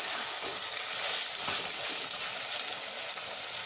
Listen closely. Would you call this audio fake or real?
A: real